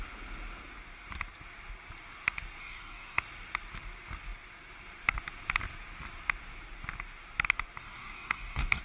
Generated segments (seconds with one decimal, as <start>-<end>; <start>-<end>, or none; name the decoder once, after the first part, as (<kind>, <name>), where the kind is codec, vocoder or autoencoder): 2.6-3.2 (codec, DAC); 7.8-8.8